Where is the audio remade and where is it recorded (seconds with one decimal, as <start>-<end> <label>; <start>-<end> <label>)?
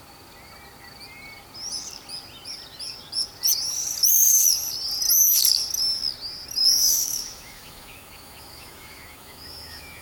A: 0.0-6.6 recorded; 6.6-10.0 remade